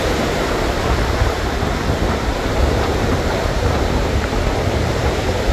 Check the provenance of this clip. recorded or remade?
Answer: remade